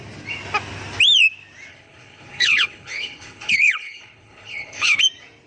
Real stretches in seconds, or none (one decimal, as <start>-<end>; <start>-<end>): 0.0-1.7; 5.0-5.5